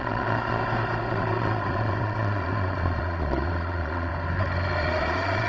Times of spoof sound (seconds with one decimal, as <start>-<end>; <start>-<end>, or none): 0.0-0.6; 1.1-4.1; 4.8-5.5